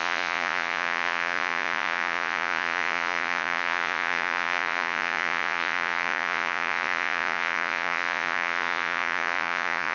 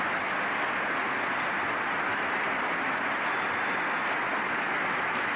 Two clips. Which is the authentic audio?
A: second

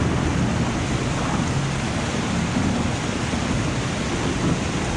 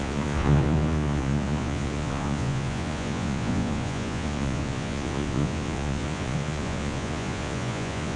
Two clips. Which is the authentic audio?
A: first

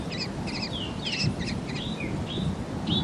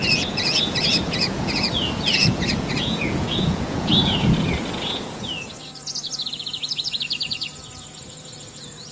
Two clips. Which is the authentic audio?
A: first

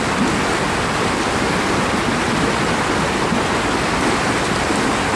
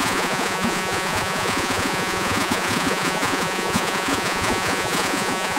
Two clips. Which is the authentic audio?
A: first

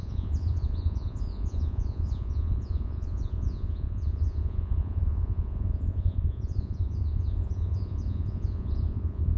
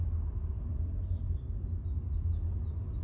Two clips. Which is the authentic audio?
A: second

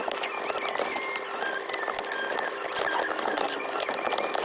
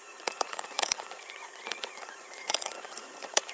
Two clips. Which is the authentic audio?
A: first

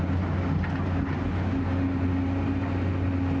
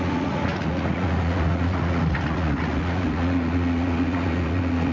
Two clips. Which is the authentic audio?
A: first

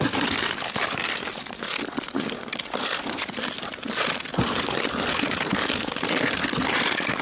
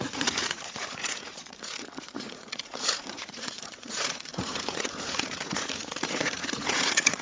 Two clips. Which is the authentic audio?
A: first